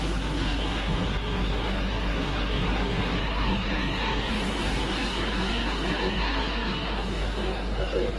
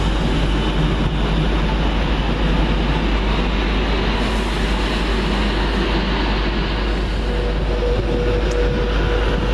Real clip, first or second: second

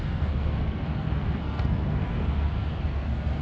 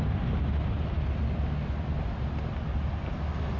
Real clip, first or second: second